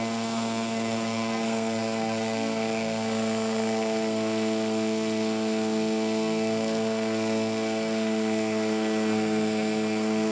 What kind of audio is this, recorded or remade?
remade